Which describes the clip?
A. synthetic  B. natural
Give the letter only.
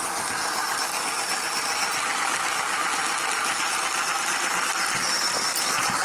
B